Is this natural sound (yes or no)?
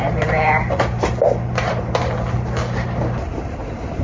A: no